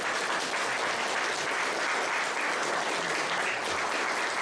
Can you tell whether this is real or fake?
real